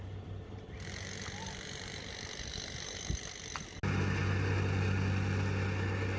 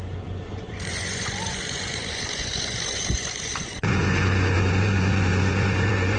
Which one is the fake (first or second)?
second